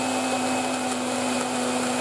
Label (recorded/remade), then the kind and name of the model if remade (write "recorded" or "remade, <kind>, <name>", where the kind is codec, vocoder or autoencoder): recorded